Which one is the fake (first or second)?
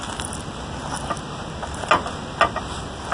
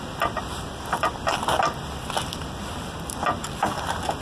second